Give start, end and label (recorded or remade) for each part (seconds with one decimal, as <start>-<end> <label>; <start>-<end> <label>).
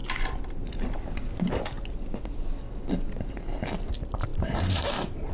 0.0-4.3 recorded; 4.3-5.3 remade